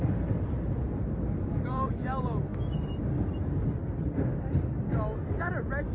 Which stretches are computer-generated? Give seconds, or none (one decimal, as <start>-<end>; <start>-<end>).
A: none